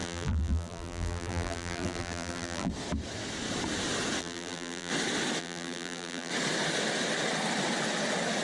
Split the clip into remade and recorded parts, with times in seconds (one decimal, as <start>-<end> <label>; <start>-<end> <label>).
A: 0.0-2.7 remade; 2.7-4.2 recorded; 4.2-4.9 remade; 4.9-5.4 recorded; 5.4-6.3 remade; 6.3-8.4 recorded